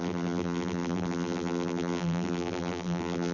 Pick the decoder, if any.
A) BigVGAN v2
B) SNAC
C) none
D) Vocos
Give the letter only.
A